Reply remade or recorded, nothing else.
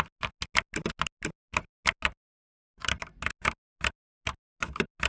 recorded